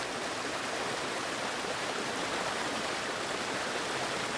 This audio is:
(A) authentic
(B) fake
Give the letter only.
A